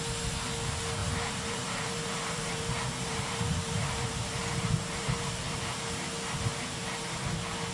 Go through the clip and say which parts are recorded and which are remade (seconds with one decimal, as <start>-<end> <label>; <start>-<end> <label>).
0.0-1.0 recorded; 1.0-5.6 remade; 5.6-6.5 recorded; 6.5-7.3 remade; 7.3-7.7 recorded